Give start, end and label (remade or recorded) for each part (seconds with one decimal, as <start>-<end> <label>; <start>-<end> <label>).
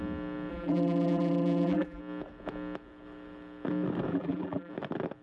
0.0-0.5 recorded; 0.5-2.0 remade; 2.0-4.1 recorded; 4.1-4.7 remade; 4.7-5.2 recorded